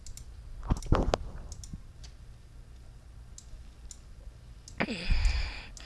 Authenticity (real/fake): real